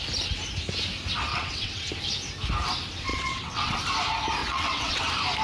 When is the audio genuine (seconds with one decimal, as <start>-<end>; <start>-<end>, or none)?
0.0-1.3; 1.9-3.1; 3.8-4.4; 5.0-5.4